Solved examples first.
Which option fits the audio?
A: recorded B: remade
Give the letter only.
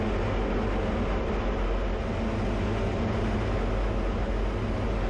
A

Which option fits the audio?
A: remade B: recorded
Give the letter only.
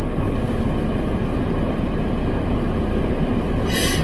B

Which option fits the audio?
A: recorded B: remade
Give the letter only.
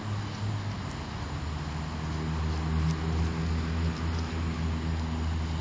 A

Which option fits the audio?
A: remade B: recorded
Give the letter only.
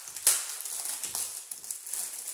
B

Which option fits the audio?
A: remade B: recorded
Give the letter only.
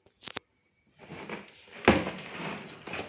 B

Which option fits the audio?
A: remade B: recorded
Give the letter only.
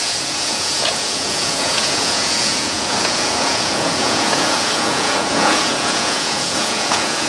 A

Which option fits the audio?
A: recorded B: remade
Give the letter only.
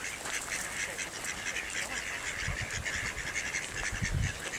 A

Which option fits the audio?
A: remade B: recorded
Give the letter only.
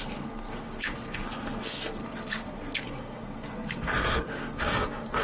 A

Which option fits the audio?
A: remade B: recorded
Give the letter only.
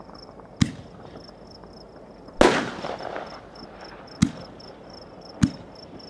B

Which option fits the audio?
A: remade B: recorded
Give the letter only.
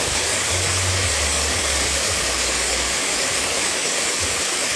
A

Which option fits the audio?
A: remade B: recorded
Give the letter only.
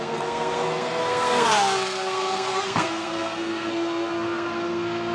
A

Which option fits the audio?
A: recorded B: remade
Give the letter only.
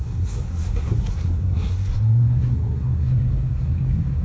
B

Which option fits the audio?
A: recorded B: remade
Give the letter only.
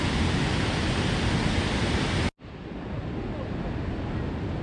A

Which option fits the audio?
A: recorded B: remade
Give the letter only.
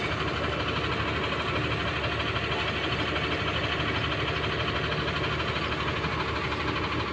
A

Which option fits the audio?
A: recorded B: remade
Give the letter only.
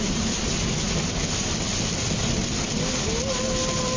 A